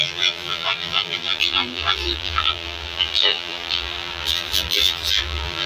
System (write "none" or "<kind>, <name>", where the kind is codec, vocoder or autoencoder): vocoder, BigVGAN v2